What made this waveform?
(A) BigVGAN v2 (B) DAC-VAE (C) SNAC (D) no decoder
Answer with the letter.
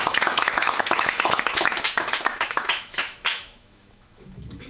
B